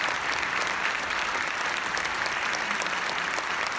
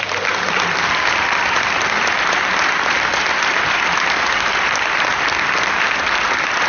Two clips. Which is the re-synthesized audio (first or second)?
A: first